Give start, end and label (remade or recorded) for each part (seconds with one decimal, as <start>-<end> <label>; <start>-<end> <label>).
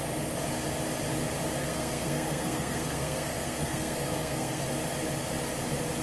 0.0-1.6 recorded; 1.6-4.6 remade; 4.6-6.0 recorded